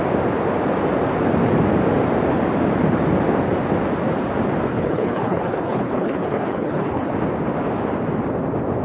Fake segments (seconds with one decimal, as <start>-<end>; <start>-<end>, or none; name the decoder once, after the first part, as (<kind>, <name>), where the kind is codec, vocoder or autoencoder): 4.7-7.1 (codec, HILCodec)